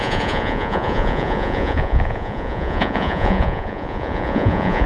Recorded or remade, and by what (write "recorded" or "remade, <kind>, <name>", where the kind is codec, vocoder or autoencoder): remade, vocoder, Vocos